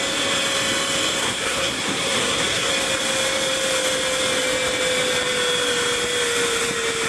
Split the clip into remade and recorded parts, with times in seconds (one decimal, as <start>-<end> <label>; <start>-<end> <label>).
0.0-1.2 recorded; 1.2-2.7 remade; 2.7-7.1 recorded